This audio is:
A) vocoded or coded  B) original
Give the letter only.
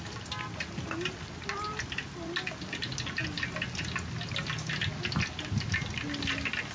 B